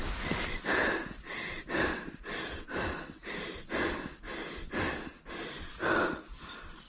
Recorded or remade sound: recorded